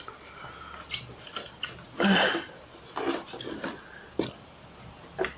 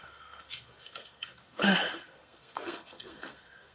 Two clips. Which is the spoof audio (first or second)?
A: second